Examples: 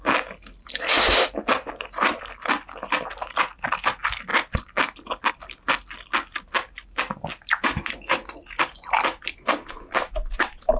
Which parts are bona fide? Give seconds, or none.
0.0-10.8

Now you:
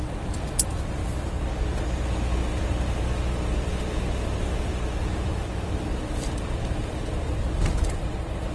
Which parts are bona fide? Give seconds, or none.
1.0-5.3